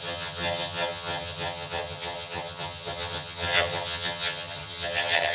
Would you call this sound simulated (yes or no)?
yes